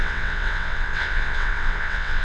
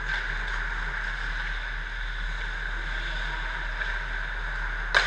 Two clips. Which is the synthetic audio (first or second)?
first